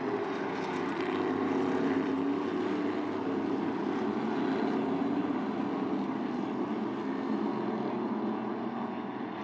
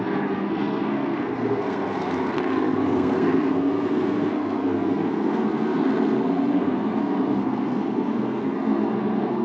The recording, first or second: first